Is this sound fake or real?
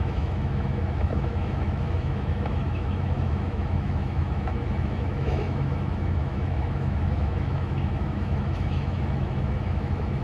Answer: fake